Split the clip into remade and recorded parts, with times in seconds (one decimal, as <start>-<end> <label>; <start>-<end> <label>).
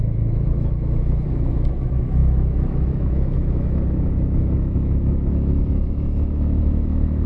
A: 0.0-7.3 remade